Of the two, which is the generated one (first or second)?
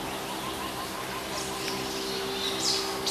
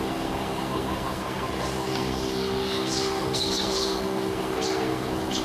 second